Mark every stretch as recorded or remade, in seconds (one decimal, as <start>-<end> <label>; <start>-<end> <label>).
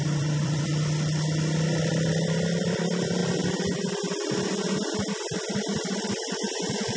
0.0-0.7 remade; 0.7-2.1 recorded; 2.1-3.2 remade; 3.2-5.9 recorded; 5.9-7.0 remade